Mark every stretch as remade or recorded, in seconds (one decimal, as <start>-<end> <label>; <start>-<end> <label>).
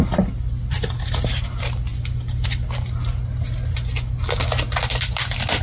0.0-5.6 recorded